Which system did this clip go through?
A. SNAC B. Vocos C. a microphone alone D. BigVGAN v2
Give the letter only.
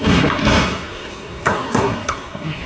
A